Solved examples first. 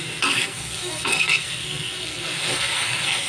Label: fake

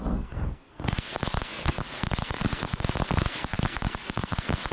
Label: fake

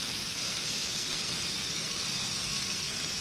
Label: fake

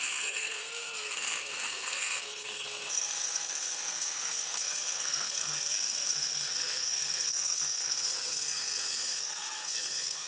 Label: fake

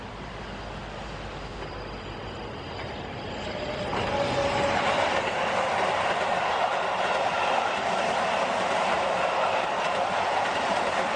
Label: real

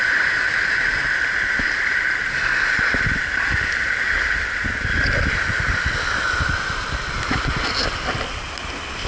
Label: real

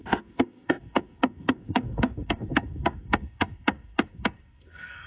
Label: fake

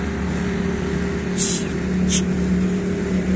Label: real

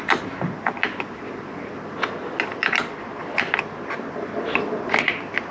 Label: real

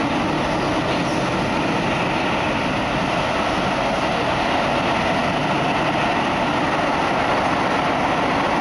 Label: real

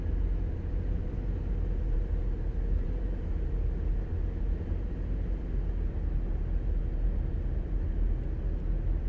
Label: real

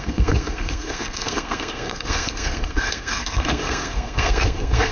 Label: fake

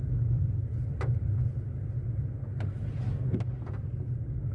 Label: real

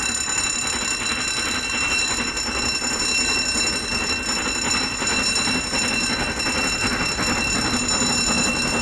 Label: real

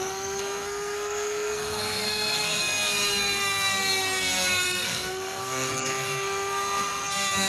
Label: fake